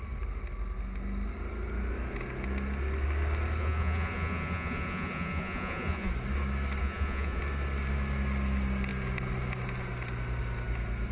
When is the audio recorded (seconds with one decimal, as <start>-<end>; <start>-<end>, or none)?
0.0-3.6; 6.1-6.8; 7.4-11.1